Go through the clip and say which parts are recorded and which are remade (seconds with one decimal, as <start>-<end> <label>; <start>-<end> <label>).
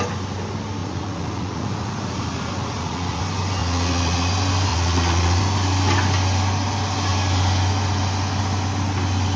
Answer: 0.0-0.8 recorded; 0.8-3.2 remade; 3.2-3.6 recorded; 3.6-4.3 remade; 4.3-4.7 recorded; 4.7-5.4 remade; 5.4-9.4 recorded